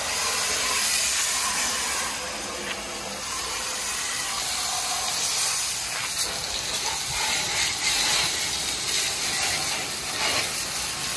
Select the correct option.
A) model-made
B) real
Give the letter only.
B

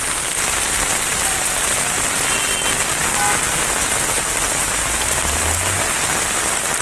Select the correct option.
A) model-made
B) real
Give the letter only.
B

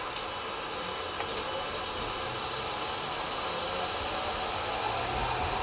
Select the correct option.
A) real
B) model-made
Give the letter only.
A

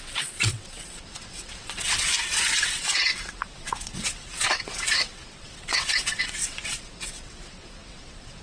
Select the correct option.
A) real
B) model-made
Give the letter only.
B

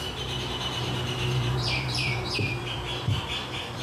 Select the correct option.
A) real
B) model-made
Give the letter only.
B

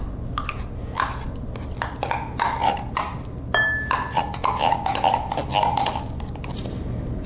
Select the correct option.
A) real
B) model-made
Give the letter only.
A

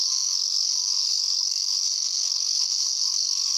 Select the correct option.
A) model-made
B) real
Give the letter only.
A